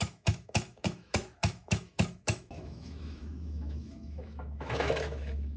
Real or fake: fake